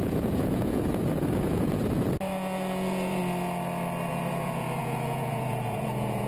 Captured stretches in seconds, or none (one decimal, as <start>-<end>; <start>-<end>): 3.2-4.1